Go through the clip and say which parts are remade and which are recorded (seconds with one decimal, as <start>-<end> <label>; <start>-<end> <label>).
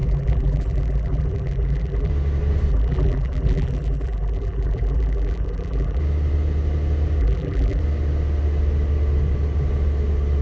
0.0-2.1 remade; 2.1-2.7 recorded; 2.7-6.0 remade; 6.0-7.2 recorded; 7.2-7.8 remade; 7.8-10.4 recorded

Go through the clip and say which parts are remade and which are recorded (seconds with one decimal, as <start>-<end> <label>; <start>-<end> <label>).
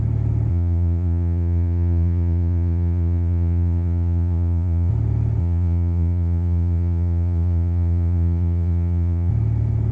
0.0-0.5 recorded; 0.5-4.9 remade; 4.9-5.4 recorded; 5.4-9.3 remade; 9.3-9.9 recorded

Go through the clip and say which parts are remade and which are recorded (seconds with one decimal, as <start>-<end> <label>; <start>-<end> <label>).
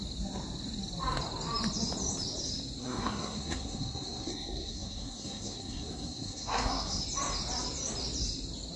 0.0-2.8 recorded; 2.8-7.0 remade; 7.0-8.8 recorded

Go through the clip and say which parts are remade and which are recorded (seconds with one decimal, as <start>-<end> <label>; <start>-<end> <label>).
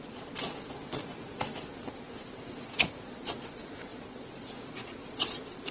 0.0-1.0 remade; 1.0-1.8 recorded; 1.8-5.7 remade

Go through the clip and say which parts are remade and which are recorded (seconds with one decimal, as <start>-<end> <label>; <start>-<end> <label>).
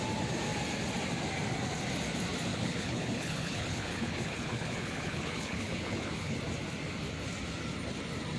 0.0-2.5 recorded; 2.5-6.4 remade; 6.4-8.4 recorded